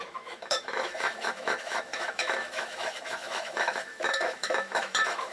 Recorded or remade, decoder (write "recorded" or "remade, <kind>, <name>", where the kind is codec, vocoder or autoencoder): remade, autoencoder, DAC-VAE